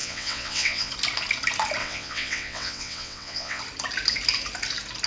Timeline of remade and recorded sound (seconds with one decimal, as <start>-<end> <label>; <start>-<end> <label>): 0.0-0.9 remade; 0.9-1.8 recorded; 1.8-3.6 remade; 3.6-5.1 recorded